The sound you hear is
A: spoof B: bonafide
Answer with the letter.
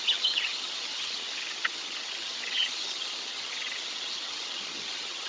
A